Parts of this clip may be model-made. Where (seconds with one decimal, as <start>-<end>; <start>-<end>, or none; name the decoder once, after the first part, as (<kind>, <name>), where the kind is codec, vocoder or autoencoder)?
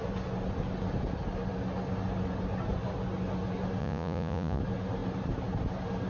3.8-4.6 (vocoder, Vocos)